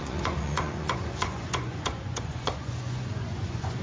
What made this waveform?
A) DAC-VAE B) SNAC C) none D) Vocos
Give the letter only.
D